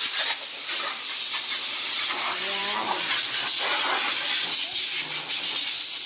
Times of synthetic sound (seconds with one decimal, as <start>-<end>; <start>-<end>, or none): none